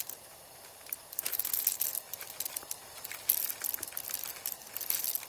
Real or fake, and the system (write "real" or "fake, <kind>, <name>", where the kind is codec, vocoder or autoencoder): real